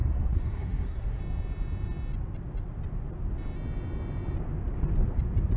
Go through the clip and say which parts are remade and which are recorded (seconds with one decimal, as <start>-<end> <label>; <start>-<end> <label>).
0.0-1.2 remade; 1.2-5.6 recorded